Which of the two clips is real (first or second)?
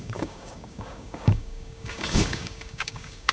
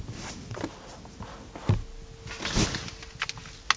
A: second